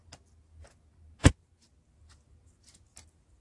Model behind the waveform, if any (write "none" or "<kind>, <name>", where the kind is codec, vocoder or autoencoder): none